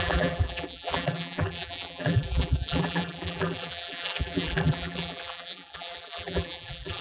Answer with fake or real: fake